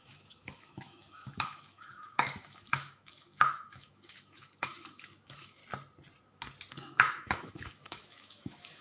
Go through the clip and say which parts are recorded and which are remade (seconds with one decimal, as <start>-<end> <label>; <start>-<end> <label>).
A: 0.0-5.6 remade; 5.6-6.7 recorded; 6.7-8.8 remade